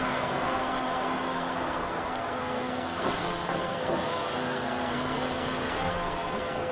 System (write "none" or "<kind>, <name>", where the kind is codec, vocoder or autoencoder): codec, SNAC